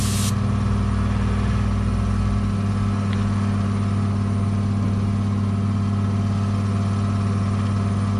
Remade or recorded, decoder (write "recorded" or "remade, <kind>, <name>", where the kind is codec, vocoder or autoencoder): recorded